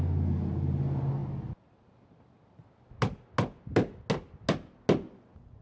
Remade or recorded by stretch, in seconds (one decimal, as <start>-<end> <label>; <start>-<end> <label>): 0.0-5.6 recorded